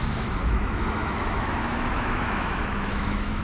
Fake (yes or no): yes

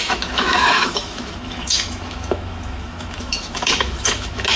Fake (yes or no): yes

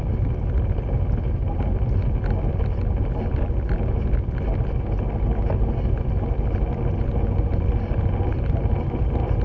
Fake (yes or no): no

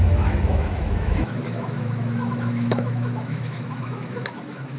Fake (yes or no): yes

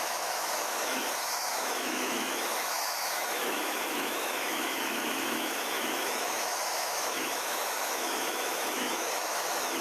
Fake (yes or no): yes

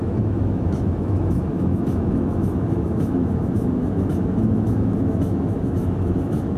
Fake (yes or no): yes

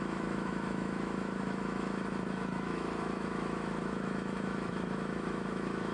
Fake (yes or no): yes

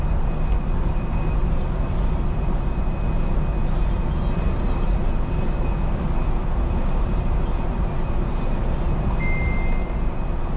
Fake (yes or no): no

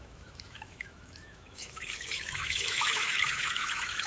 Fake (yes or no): yes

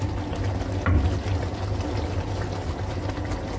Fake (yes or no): no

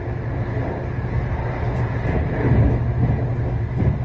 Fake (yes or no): no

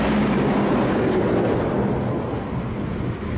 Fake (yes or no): no